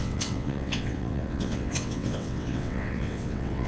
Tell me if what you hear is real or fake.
fake